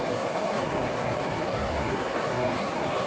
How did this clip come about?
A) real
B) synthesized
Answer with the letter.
B